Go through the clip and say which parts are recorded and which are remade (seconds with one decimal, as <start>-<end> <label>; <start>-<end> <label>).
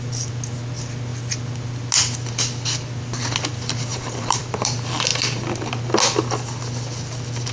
0.0-3.9 recorded; 3.9-4.4 remade; 4.4-7.5 recorded